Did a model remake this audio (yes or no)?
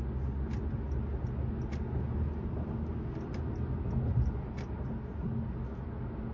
no